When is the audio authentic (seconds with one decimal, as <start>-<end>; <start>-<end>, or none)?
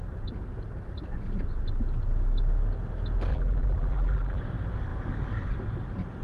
0.0-3.3; 4.4-6.2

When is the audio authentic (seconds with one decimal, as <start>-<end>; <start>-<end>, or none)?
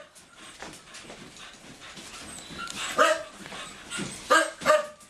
0.0-5.1